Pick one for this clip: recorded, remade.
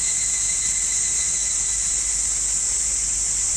recorded